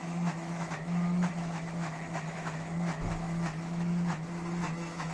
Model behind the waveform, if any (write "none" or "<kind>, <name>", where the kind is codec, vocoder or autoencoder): autoencoder, DAC-VAE